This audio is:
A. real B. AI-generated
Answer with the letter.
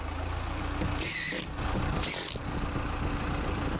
A